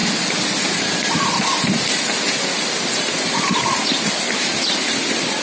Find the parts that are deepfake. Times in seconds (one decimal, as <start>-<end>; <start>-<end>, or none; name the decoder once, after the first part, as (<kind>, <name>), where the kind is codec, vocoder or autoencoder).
none